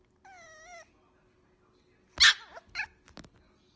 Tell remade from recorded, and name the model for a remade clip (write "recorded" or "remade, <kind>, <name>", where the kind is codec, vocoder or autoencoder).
recorded